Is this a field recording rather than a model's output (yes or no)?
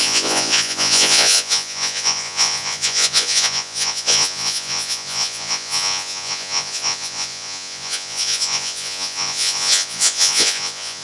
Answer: no